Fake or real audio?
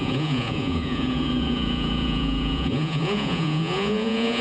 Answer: fake